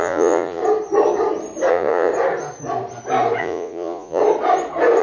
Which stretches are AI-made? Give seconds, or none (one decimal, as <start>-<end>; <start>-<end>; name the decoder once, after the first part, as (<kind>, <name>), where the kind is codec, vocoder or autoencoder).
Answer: 0.0-0.6 (vocoder, Vocos); 1.7-2.1; 3.4-4.2